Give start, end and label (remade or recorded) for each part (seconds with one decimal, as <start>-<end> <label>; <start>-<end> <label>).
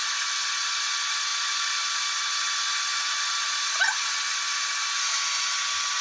0.0-6.0 recorded